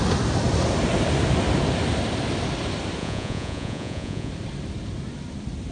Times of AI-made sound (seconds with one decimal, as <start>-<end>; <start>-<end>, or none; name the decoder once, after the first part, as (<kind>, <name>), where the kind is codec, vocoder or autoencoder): 3.0-4.3 (vocoder, Vocos)